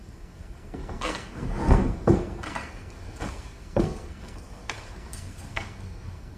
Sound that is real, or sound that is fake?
fake